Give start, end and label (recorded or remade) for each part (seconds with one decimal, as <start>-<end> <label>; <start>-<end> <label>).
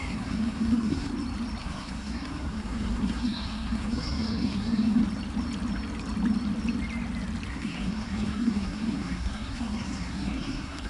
0.0-1.1 remade; 1.1-1.6 recorded; 1.6-5.0 remade; 5.0-7.5 recorded; 7.5-10.9 remade